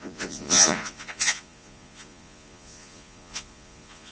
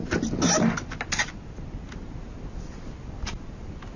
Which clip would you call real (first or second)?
second